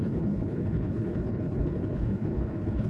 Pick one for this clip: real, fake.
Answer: fake